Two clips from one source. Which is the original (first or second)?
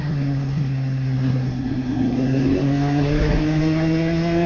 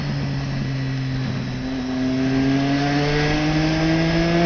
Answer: second